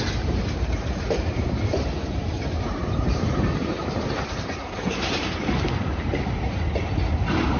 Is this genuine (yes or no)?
no